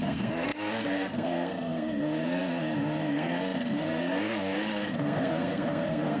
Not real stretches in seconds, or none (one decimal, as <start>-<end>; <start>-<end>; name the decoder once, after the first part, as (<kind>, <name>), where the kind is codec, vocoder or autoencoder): 0.0-6.2 (codec, SNAC)